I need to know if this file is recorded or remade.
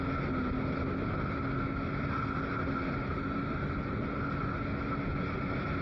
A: recorded